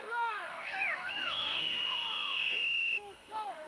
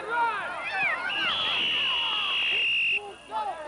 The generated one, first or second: first